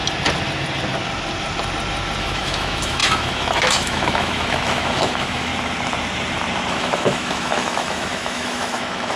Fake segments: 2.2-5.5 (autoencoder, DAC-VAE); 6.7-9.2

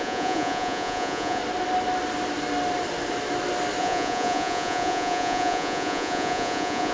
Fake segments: 0.0-1.4 (vocoder, Vocos); 3.8-6.9